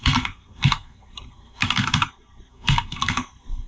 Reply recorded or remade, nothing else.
remade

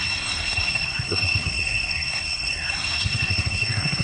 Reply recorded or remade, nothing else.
remade